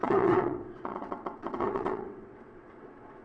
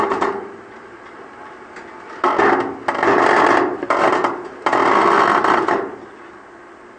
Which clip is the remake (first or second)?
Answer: first